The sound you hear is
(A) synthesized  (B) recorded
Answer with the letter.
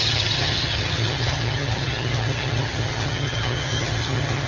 A